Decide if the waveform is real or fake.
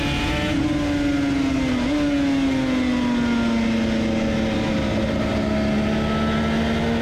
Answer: real